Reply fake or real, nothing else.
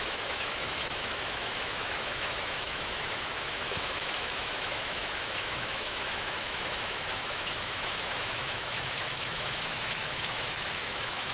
fake